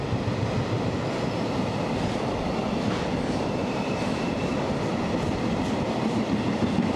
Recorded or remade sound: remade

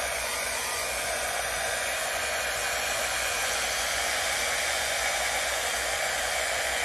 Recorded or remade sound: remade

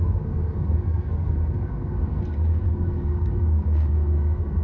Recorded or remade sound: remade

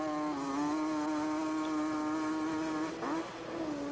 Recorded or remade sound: recorded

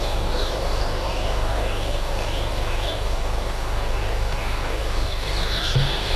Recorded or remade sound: remade